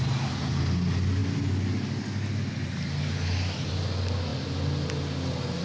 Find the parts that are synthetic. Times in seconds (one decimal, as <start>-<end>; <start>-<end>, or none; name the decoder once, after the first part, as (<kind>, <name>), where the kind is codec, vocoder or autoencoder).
none